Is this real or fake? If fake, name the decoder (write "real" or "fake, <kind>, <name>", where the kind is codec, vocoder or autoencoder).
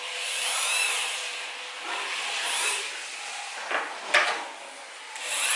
real